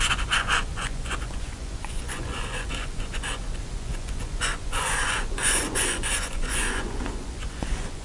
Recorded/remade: remade